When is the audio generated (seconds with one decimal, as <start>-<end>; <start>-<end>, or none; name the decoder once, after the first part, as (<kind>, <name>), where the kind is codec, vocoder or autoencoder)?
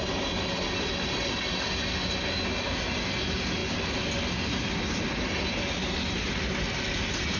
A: none